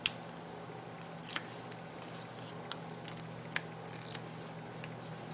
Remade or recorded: recorded